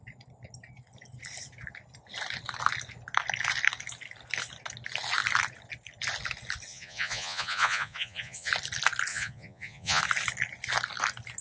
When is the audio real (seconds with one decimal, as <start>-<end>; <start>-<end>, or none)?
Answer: 0.0-6.7; 8.5-9.1; 10.0-11.4